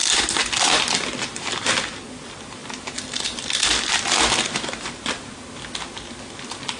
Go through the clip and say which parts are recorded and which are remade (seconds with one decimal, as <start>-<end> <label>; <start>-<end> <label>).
0.0-6.8 recorded